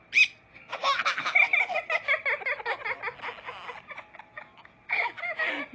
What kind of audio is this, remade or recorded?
recorded